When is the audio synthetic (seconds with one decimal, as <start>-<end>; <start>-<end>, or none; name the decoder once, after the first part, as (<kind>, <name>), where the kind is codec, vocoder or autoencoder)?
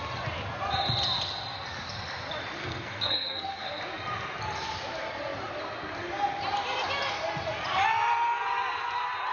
2.6-3.8 (codec, SNAC)